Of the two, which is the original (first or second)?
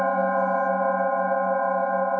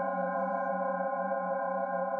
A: first